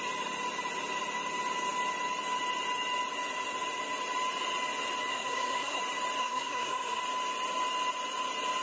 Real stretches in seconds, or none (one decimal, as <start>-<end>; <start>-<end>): 0.0-5.1; 5.8-6.2; 7.0-8.6

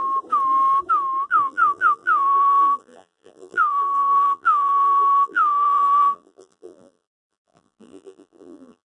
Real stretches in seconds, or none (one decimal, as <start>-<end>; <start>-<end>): 0.0-1.3

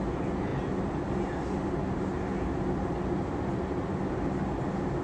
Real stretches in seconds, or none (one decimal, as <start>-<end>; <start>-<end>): 0.0-5.0

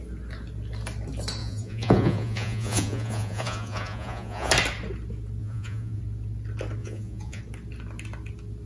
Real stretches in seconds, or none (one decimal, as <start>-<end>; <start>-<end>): 0.0-1.4; 4.5-5.4; 6.0-6.8; 7.4-8.7